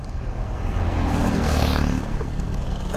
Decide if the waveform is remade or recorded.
remade